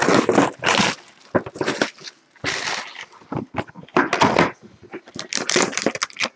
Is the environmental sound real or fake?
real